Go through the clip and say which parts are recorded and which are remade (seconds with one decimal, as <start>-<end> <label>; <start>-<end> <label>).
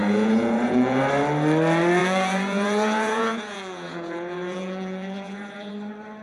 0.0-1.0 remade; 1.0-2.0 recorded; 2.0-5.7 remade; 5.7-6.2 recorded